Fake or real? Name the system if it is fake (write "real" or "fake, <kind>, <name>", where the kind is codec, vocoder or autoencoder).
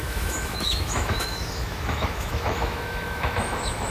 fake, autoencoder, DAC-VAE